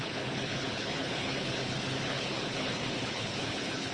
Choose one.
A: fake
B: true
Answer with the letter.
A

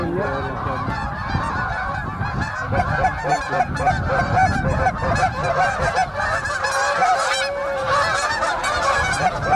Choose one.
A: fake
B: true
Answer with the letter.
B